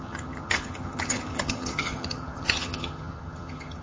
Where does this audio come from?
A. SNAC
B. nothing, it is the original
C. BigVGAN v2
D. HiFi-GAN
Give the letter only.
D